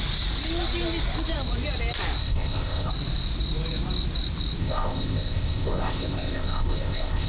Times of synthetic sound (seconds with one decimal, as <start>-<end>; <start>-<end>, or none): 2.2-2.9; 4.6-7.3